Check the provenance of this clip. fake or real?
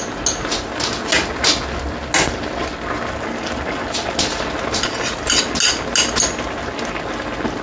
real